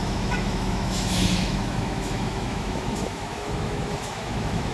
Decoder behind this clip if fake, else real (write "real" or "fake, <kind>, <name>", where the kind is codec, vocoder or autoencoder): fake, autoencoder, DAC-VAE